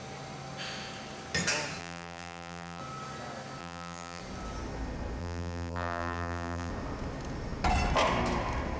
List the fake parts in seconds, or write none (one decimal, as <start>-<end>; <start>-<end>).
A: 1.8-2.8; 3.6-4.2; 5.2-6.7